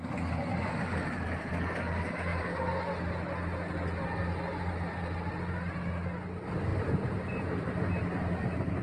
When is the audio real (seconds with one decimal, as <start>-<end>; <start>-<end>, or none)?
0.0-0.5; 1.5-6.7; 7.9-8.8